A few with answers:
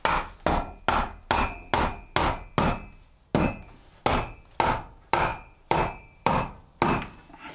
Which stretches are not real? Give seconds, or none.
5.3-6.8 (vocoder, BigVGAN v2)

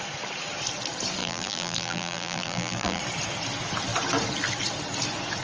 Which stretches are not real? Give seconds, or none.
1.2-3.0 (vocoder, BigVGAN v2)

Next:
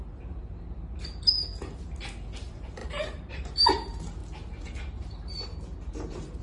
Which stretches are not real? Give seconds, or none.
0.0-0.4 (vocoder, BigVGAN v2); 2.4-4.2; 5.9-6.4

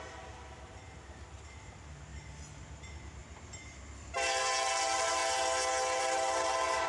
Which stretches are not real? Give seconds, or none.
0.0-2.1 (vocoder, BigVGAN v2); 2.6-3.2; 4.4-5.2; 6.0-6.9

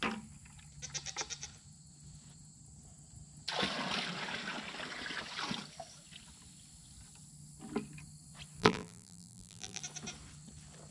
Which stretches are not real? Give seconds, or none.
8.6-9.8 (vocoder, BigVGAN v2)

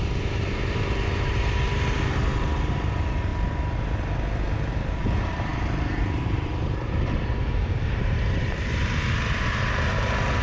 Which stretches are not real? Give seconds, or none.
0.0-3.3 (vocoder, BigVGAN v2); 4.7-10.4

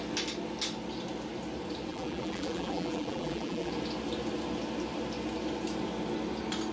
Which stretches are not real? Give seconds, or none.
1.9-3.7 (vocoder, BigVGAN v2)